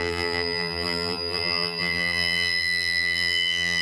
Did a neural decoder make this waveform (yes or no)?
yes